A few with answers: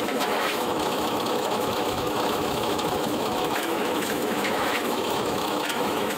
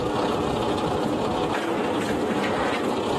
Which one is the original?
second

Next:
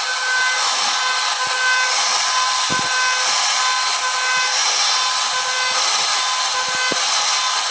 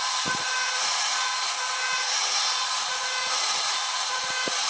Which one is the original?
first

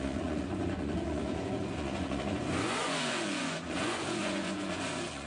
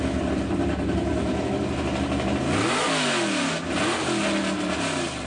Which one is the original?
second